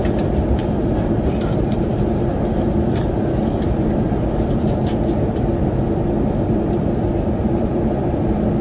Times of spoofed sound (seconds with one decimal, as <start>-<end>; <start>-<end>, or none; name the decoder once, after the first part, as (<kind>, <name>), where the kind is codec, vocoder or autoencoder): none